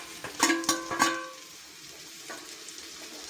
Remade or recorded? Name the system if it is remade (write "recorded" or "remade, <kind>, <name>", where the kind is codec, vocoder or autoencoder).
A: recorded